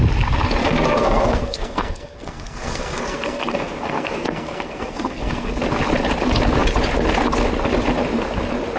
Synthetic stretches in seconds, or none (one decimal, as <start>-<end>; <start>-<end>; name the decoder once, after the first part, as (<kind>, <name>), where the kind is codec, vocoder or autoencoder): 0.6-5.5 (codec, SNAC)